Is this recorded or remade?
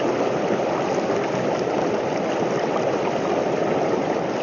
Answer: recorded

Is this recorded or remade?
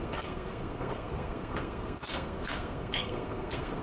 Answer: remade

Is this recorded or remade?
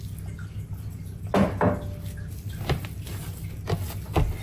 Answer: recorded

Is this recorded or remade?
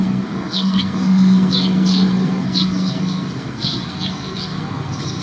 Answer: remade